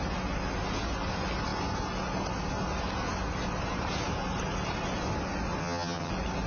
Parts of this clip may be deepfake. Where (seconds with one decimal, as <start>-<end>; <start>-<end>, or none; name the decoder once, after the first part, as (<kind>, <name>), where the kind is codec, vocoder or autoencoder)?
5.6-6.1 (vocoder, HiFi-GAN)